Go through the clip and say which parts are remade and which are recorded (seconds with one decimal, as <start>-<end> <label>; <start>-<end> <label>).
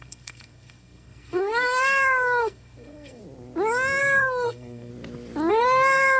0.0-3.2 remade; 3.2-4.0 recorded; 4.0-4.9 remade; 4.9-5.5 recorded; 5.5-6.2 remade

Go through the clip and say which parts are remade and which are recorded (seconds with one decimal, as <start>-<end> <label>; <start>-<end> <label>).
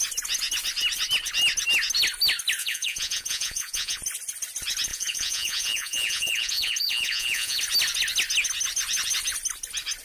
0.0-2.6 recorded; 2.6-4.0 remade; 4.0-4.9 recorded; 4.9-7.6 remade; 7.6-10.0 recorded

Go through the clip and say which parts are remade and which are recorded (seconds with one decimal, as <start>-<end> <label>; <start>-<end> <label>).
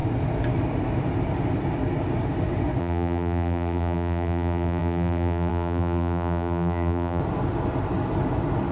0.0-2.8 recorded; 2.8-7.2 remade; 7.2-8.7 recorded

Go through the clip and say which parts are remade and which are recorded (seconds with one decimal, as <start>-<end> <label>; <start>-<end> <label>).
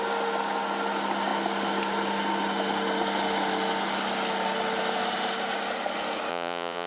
0.0-6.3 recorded; 6.3-6.9 remade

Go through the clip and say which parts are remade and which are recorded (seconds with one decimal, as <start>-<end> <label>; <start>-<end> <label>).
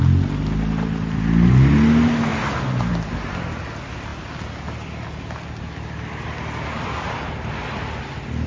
0.0-8.5 recorded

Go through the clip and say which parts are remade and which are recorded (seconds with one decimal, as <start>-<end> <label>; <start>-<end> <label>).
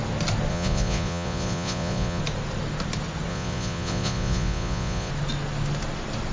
0.0-0.5 recorded; 0.5-2.2 remade; 2.2-3.3 recorded; 3.3-5.1 remade; 5.1-6.3 recorded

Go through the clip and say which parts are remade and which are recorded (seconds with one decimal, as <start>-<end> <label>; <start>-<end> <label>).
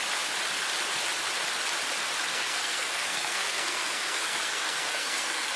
0.0-2.3 recorded; 2.3-5.6 remade